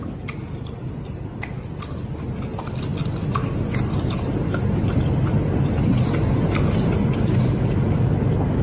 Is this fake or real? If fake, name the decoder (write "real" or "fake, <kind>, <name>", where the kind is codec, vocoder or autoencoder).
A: real